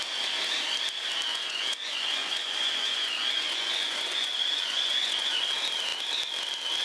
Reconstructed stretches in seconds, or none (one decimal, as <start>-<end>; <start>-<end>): 1.3-5.4